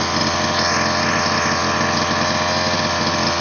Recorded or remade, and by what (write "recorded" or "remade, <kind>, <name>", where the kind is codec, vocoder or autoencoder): recorded